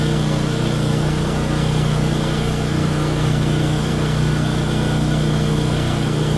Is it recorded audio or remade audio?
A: remade